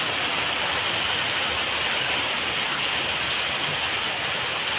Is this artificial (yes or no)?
no